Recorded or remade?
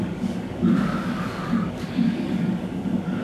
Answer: remade